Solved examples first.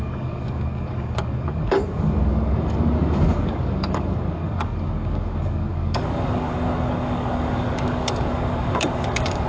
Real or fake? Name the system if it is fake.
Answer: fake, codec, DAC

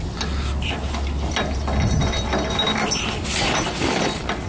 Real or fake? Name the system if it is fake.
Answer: real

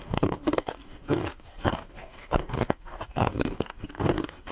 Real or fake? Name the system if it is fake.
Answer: fake, codec, DAC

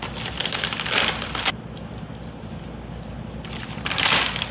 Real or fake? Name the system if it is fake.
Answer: real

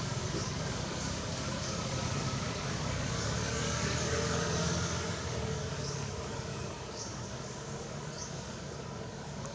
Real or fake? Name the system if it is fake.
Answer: fake, codec, DAC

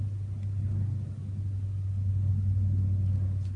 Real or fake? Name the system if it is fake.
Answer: real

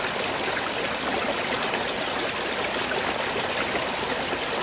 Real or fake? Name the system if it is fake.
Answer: real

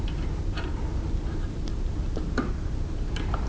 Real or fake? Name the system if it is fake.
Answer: real